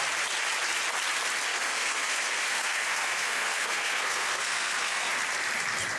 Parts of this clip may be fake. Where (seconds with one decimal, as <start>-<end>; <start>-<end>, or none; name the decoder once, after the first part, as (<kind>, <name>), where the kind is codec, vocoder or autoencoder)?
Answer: 1.5-5.1 (codec, SNAC)